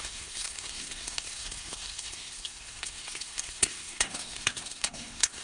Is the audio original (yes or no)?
no